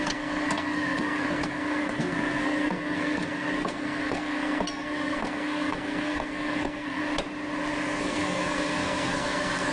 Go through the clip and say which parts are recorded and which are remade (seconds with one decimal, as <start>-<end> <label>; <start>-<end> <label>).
0.0-7.0 remade; 7.0-8.0 recorded; 8.0-9.7 remade